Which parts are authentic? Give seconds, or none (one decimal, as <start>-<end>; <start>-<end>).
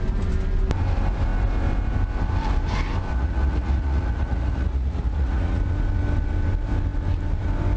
0.0-3.1; 5.6-7.8